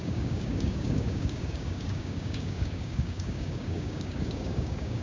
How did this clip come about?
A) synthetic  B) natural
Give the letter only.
A